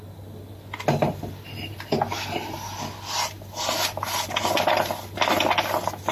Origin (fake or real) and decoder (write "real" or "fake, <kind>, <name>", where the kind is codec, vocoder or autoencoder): real